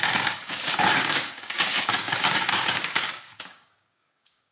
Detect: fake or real fake